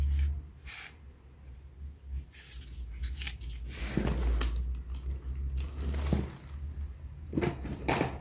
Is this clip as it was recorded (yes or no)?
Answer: yes